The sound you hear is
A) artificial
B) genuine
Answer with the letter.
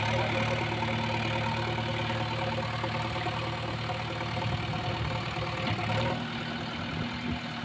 B